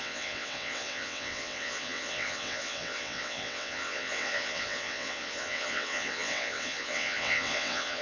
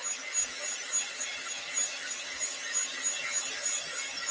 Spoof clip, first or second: first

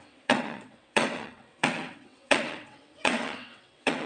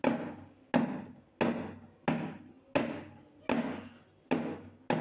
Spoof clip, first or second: first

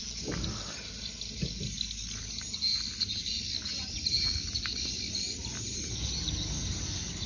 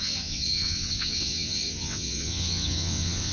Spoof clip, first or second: second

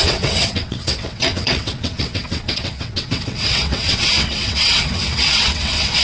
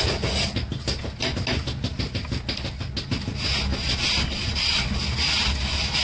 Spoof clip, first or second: first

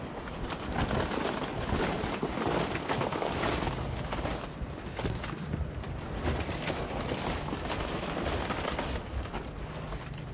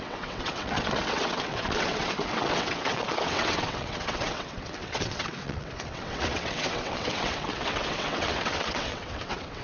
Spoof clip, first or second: second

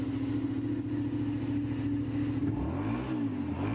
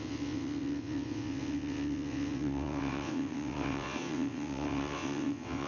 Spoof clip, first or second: second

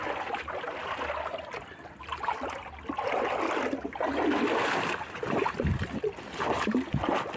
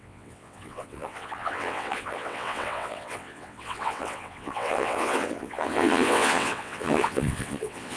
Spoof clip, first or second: second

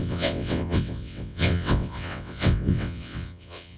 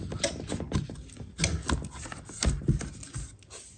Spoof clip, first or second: first